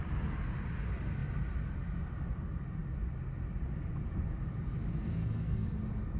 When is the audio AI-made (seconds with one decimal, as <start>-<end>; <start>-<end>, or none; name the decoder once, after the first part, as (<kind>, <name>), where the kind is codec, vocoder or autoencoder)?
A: 4.9-5.8 (codec, SNAC)